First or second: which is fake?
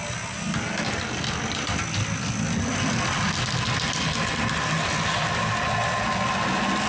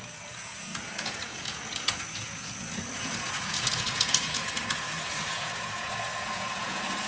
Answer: second